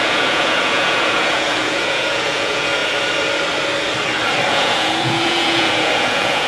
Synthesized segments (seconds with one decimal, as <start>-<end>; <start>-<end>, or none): 0.0-2.8; 4.5-6.5